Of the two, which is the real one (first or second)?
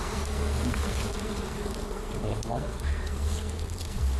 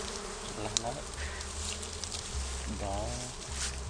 second